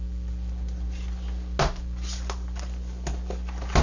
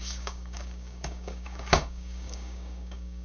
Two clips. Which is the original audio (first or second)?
first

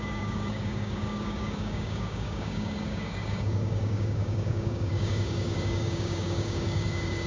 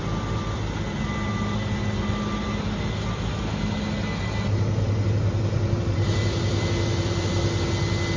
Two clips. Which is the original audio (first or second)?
second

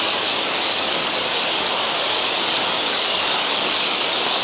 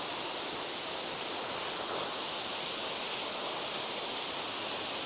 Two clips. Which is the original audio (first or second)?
second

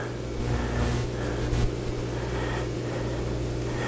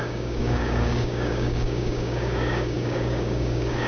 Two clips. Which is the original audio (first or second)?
first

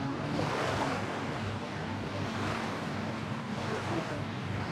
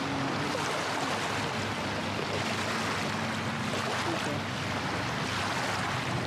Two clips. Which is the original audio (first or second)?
second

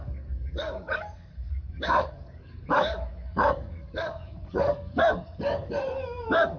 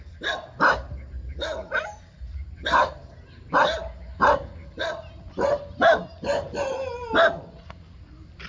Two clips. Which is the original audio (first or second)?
second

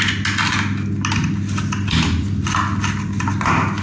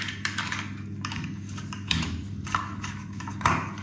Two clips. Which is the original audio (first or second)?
first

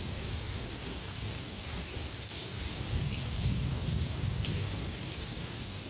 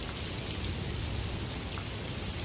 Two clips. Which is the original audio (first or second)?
second